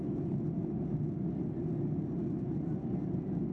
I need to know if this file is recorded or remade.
recorded